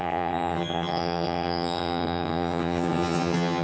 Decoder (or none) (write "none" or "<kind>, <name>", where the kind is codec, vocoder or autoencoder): vocoder, HiFi-GAN